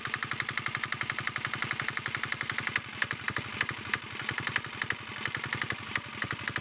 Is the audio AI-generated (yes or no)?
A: no